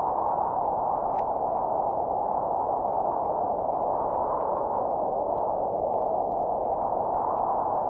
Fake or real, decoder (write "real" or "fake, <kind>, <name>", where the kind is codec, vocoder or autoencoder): fake, autoencoder, DAC-VAE